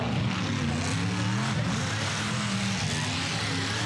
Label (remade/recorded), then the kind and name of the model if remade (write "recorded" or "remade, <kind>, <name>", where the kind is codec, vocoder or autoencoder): recorded